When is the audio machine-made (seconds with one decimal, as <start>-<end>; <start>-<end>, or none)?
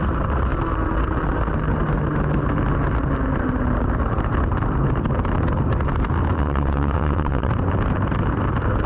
6.4-7.5